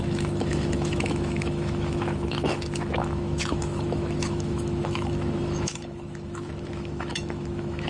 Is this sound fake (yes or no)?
yes